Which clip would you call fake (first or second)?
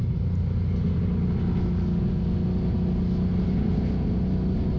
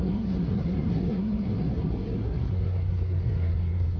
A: second